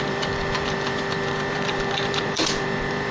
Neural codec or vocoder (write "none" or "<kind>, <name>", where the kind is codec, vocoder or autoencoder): vocoder, BigVGAN v2